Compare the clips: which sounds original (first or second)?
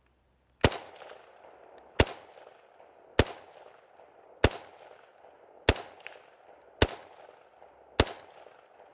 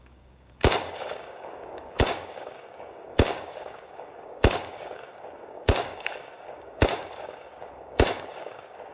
first